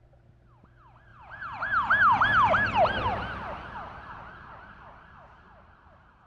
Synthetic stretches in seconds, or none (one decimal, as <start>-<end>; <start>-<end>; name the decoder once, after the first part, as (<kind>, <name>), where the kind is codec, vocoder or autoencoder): 1.1-1.9 (vocoder, BigVGAN v2)